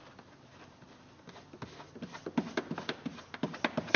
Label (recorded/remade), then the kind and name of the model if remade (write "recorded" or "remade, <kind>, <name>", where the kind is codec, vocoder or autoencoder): recorded